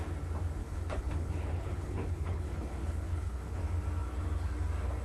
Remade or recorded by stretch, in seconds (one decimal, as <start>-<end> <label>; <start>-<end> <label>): 0.0-0.6 recorded; 0.6-3.6 remade; 3.6-5.0 recorded